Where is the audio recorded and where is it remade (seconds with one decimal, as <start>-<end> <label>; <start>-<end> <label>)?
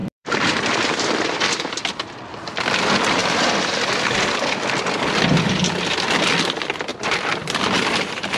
0.0-1.4 remade; 1.4-6.9 recorded; 6.9-8.4 remade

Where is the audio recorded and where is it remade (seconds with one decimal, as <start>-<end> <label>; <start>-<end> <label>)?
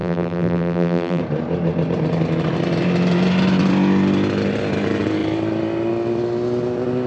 0.0-1.2 remade; 1.2-7.1 recorded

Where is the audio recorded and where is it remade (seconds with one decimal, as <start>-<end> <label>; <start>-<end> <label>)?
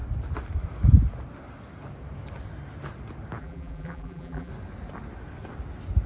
0.0-3.4 recorded; 3.4-4.5 remade; 4.5-6.1 recorded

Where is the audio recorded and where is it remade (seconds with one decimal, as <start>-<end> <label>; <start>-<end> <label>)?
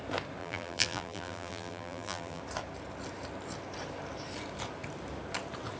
0.0-0.4 recorded; 0.4-2.4 remade; 2.4-5.8 recorded